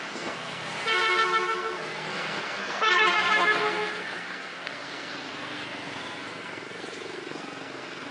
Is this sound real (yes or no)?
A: no